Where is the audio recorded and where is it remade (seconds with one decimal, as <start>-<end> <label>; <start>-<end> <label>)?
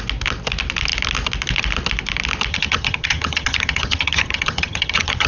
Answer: 0.0-2.5 recorded; 2.5-5.3 remade